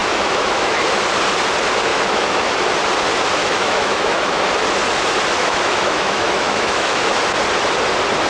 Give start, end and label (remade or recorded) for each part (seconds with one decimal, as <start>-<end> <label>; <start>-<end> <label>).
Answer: 0.0-0.8 remade; 0.8-1.9 recorded; 1.9-2.5 remade; 2.5-3.4 recorded; 3.4-4.5 remade; 4.5-5.4 recorded; 5.4-7.2 remade; 7.2-8.3 recorded

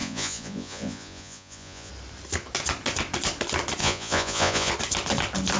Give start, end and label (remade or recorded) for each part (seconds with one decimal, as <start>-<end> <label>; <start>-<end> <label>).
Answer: 0.0-1.9 remade; 1.9-3.8 recorded; 3.8-4.7 remade; 4.7-5.6 recorded

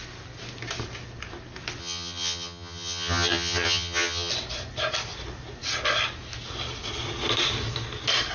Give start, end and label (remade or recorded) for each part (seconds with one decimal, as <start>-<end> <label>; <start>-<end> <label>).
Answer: 0.0-1.8 recorded; 1.8-4.3 remade; 4.3-8.3 recorded

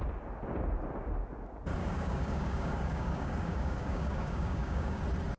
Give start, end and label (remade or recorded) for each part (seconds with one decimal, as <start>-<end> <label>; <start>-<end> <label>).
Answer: 0.0-1.8 recorded; 1.8-5.0 remade; 5.0-5.4 recorded

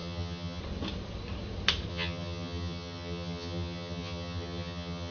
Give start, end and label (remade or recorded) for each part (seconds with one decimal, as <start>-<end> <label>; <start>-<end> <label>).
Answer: 0.0-0.6 remade; 0.6-1.9 recorded; 1.9-5.1 remade

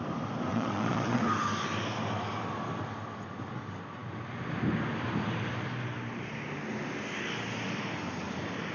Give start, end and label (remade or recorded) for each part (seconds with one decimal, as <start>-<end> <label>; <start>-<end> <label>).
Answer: 0.0-0.5 recorded; 0.5-1.2 remade; 1.2-8.7 recorded

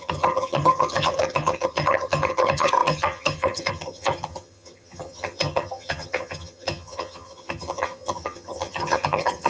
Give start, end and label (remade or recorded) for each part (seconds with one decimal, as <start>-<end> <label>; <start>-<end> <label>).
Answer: 0.0-9.5 remade